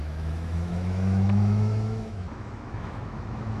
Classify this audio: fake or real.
fake